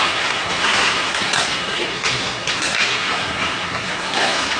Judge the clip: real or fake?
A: fake